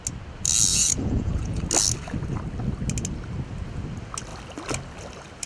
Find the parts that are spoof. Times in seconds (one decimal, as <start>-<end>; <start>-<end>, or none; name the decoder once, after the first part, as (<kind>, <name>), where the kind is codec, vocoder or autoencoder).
0.7-1.6 (vocoder, Vocos)